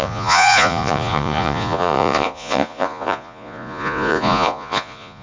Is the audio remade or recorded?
remade